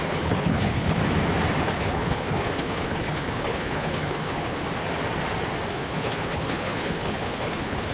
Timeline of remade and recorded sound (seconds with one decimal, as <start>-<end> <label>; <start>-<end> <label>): 0.0-1.0 remade; 1.0-1.6 recorded; 1.6-4.6 remade; 4.6-5.7 recorded; 5.7-7.9 remade